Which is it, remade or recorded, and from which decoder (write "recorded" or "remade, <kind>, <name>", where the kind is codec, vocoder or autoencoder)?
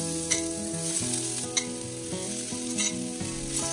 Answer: recorded